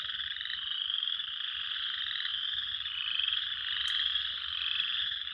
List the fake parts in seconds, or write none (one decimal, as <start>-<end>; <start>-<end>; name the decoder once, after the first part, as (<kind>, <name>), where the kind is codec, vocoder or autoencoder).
none